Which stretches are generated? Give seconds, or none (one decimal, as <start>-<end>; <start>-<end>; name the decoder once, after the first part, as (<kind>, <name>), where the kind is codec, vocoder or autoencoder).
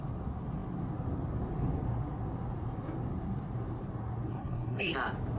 4.3-4.9 (codec, SNAC)